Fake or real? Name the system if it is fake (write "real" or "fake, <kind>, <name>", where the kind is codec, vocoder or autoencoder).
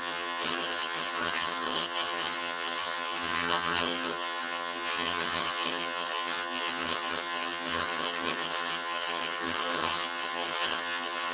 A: fake, vocoder, HiFi-GAN